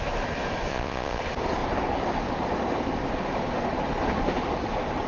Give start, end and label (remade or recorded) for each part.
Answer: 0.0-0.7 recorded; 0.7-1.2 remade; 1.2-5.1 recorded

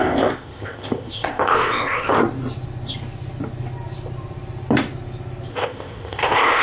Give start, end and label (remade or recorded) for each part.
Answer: 0.0-2.2 remade; 2.2-5.5 recorded; 5.5-6.6 remade

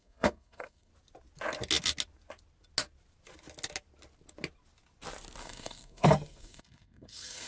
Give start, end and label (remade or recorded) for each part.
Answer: 0.0-0.9 remade; 0.9-5.4 recorded; 5.4-7.5 remade